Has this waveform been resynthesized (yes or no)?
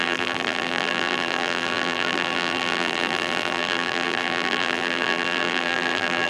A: yes